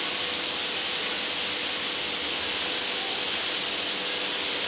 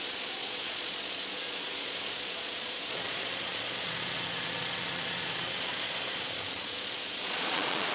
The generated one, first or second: second